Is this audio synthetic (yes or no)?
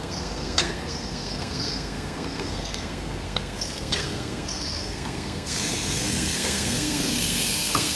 yes